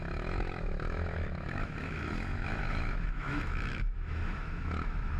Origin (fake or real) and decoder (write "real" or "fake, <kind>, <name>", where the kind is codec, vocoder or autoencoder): fake, autoencoder, DAC-VAE